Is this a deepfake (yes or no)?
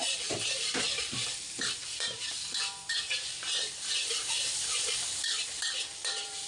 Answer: yes